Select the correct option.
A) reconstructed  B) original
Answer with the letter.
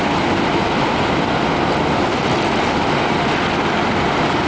B